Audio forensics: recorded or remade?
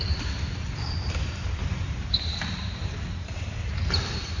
remade